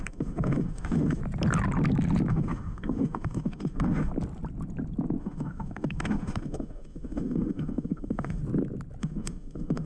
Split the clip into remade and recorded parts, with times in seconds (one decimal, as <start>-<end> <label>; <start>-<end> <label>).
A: 0.0-1.2 remade; 1.2-2.3 recorded; 2.3-4.1 remade; 4.1-5.2 recorded; 5.2-8.4 remade; 8.4-9.0 recorded; 9.0-9.9 remade